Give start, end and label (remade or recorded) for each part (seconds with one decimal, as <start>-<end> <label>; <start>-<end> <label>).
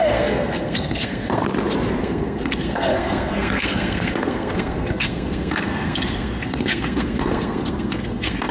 0.0-1.4 remade; 1.4-2.0 recorded; 2.0-8.5 remade